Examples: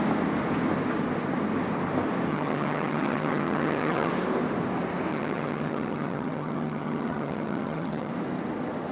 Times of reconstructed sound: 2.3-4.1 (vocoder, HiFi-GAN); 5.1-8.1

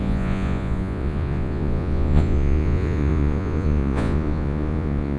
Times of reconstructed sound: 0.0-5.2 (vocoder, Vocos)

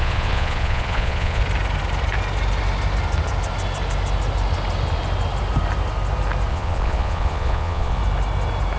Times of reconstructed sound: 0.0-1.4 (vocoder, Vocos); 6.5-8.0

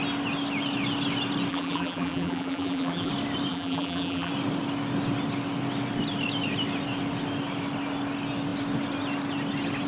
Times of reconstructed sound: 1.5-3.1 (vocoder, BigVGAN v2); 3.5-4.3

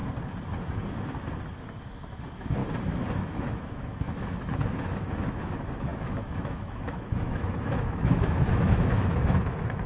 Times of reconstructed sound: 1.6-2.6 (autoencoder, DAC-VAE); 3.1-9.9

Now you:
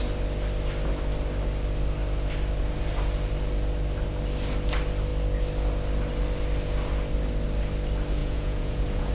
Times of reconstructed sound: 8.2-9.1 (vocoder, Vocos)

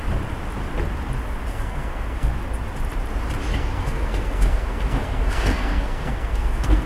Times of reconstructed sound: 1.5-2.3 (codec, SNAC); 3.5-6.9